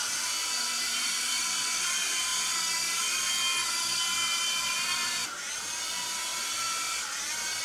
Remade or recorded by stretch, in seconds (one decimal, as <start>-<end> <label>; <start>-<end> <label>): 0.0-7.6 recorded